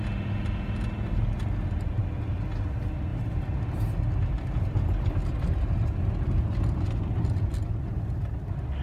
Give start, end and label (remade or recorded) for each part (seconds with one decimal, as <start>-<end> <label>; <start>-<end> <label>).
0.0-8.8 recorded